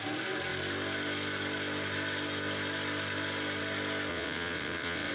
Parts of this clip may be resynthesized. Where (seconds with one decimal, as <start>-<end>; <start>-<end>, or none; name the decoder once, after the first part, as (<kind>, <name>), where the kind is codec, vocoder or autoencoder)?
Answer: 4.1-5.1 (vocoder, WaveNeXt)